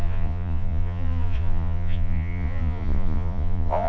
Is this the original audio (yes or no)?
no